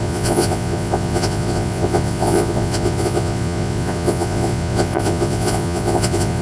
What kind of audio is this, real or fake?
fake